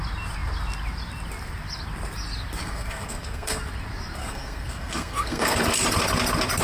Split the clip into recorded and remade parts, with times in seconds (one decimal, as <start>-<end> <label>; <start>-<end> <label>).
0.0-2.6 recorded; 2.6-3.6 remade; 3.6-4.2 recorded; 4.2-5.6 remade; 5.6-6.6 recorded